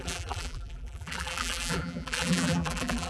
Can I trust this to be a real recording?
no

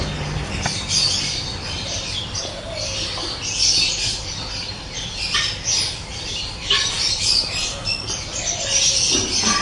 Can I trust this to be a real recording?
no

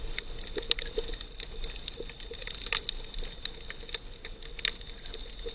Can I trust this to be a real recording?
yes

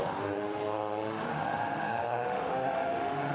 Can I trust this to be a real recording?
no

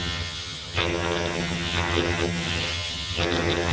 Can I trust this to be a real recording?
no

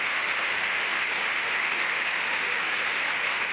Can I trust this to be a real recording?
no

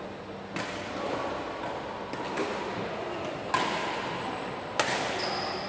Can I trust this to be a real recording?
yes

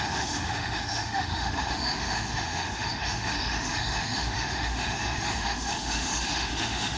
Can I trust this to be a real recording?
no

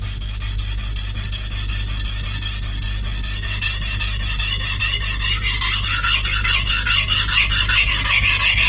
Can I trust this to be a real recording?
yes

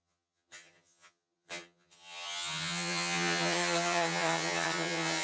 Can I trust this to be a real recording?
no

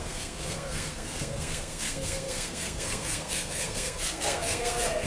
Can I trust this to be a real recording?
no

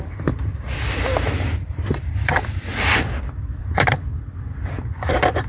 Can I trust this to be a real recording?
no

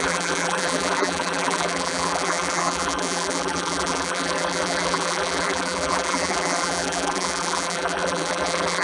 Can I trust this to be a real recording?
no